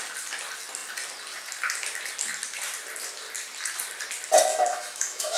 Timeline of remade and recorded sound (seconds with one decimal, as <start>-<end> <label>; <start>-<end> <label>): 0.0-4.5 recorded; 4.5-5.4 remade